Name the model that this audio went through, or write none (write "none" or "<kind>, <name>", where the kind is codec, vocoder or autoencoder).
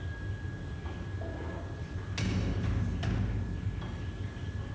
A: none